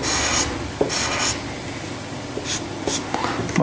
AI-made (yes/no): no